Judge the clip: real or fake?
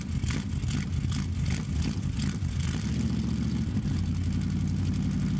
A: real